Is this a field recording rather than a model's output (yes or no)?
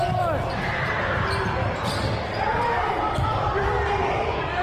yes